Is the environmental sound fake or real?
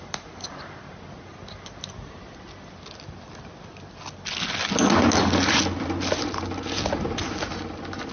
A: real